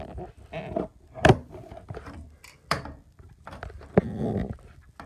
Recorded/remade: remade